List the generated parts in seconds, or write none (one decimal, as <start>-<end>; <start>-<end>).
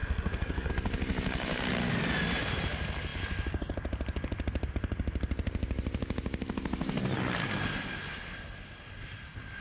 0.0-0.7